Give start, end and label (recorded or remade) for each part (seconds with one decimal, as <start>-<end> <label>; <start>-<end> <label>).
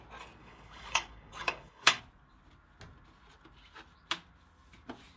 0.0-0.4 recorded; 0.4-2.0 remade; 2.0-5.2 recorded